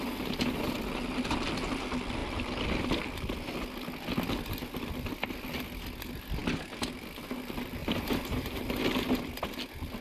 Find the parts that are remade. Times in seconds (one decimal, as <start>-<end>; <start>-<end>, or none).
7.8-8.6